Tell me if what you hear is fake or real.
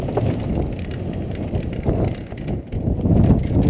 real